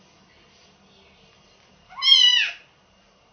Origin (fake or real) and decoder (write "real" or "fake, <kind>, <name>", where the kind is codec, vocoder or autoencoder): real